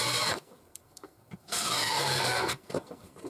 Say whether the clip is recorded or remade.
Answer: remade